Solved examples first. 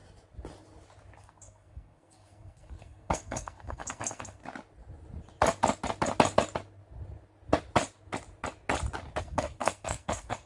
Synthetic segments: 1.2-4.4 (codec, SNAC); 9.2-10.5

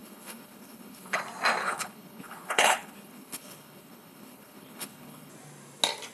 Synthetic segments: 0.0-1.2 (codec, HILCodec); 1.6-5.3

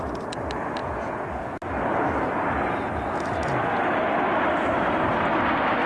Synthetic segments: 0.8-1.6 (vocoder, Vocos)

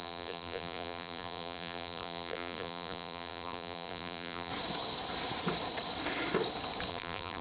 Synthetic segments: 0.0-4.5 (vocoder, BigVGAN v2); 6.9-7.4

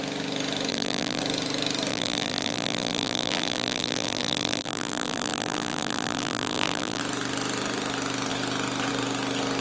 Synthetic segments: 0.7-1.2 (vocoder, BigVGAN v2); 1.9-7.0

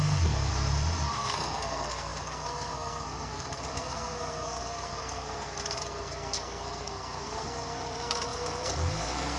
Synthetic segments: 0.0-0.5 (codec, SNAC); 1.1-9.4